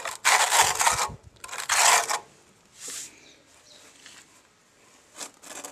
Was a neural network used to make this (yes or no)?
no